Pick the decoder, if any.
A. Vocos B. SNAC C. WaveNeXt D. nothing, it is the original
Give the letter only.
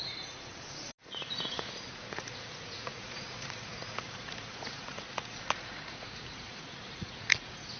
A